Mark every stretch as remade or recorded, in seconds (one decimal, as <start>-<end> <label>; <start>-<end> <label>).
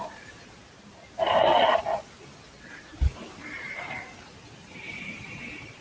0.0-1.5 remade; 1.5-2.9 recorded; 2.9-5.8 remade